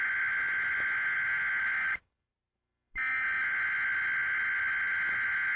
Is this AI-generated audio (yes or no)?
no